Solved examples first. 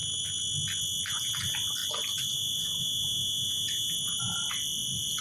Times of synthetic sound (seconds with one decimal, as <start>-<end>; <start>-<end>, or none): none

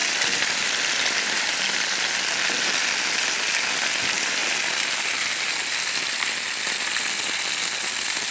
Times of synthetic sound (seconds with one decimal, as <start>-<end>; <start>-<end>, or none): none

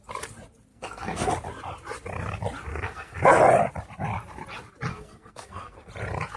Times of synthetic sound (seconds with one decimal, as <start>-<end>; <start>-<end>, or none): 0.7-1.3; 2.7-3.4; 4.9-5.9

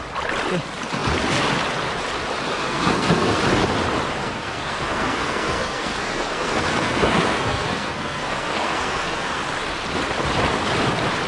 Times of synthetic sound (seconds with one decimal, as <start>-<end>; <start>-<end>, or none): 2.6-3.4; 4.2-9.4

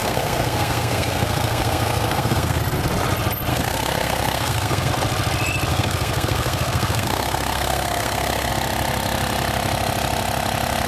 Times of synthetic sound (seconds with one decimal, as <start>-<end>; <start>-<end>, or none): 0.0-2.6; 3.5-4.9; 5.7-8.5